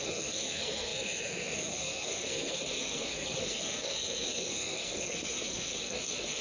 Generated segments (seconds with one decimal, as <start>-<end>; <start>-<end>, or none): 0.0-6.4